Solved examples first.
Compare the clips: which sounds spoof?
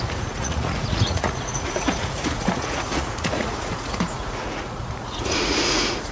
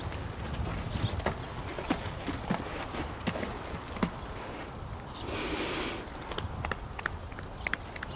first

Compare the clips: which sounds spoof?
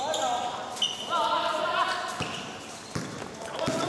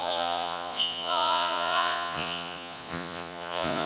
second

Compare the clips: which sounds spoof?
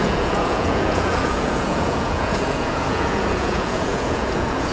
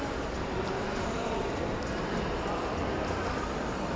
first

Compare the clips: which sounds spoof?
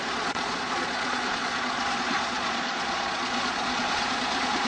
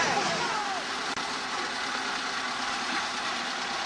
first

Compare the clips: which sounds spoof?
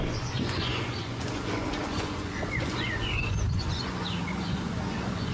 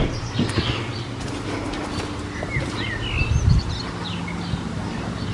first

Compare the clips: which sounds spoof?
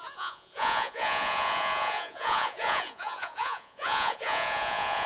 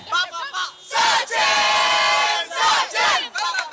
first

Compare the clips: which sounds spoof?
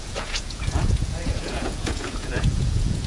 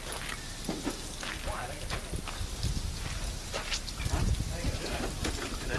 first